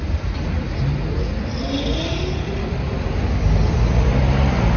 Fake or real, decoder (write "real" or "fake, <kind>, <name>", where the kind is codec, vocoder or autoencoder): real